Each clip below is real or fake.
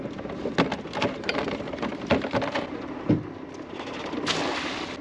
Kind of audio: real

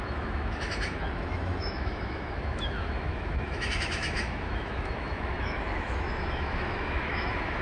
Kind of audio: fake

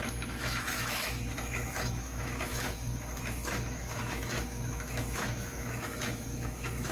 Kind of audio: fake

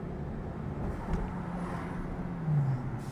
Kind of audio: real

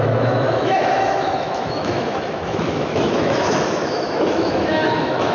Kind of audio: fake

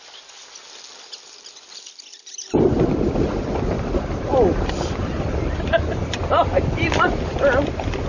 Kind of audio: real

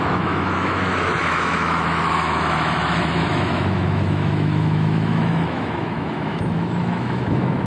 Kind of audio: fake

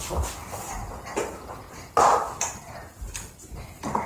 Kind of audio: real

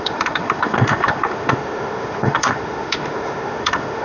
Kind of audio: fake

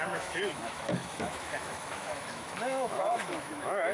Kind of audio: fake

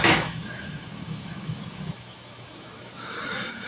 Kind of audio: fake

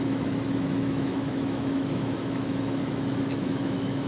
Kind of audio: fake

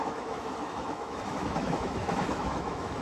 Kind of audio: fake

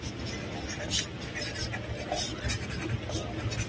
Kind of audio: real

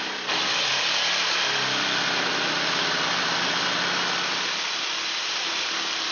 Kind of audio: real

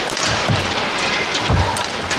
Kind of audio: real